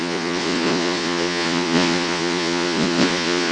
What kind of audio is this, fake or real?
fake